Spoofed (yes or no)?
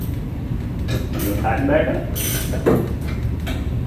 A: no